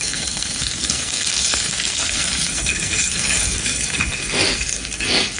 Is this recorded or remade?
remade